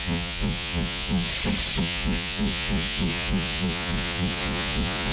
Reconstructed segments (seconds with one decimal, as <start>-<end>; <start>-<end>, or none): 0.0-1.3; 1.8-5.1

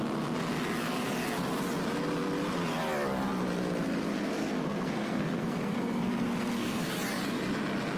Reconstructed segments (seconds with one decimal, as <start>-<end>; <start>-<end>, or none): 4.1-6.9

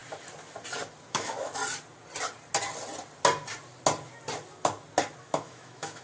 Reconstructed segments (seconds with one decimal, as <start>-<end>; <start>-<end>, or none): 1.1-1.6; 5.2-6.0